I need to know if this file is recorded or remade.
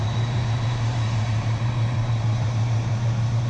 remade